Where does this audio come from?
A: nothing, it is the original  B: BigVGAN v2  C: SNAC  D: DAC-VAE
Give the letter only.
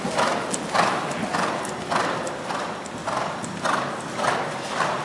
A